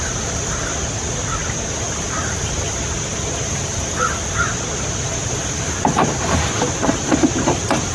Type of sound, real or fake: real